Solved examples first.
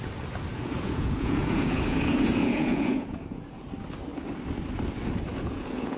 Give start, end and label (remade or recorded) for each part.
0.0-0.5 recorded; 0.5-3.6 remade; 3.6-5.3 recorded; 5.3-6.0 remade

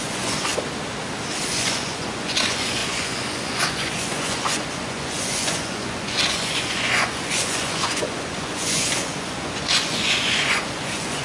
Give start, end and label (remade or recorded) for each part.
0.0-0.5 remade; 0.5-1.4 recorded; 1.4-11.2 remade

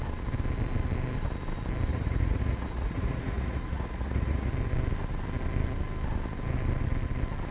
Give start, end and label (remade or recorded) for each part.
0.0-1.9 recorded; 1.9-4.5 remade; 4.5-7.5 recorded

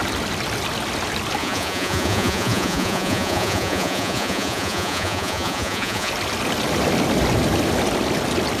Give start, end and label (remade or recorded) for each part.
0.0-1.4 recorded; 1.4-6.1 remade; 6.1-8.6 recorded

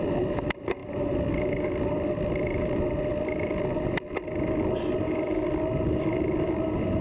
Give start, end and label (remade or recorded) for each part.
0.0-7.0 recorded

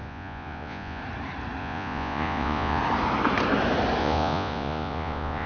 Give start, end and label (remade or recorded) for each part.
0.0-1.0 remade; 1.0-1.6 recorded; 1.6-2.8 remade; 2.8-4.0 recorded; 4.0-5.5 remade